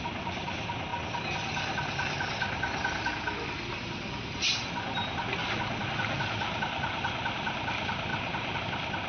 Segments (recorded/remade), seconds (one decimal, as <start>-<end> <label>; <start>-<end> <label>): 0.0-9.1 recorded